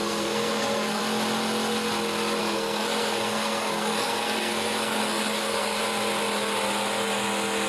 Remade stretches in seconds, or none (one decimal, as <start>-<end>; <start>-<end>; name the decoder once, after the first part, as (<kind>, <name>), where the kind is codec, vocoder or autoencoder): 0.0-1.0 (codec, SNAC); 2.4-5.8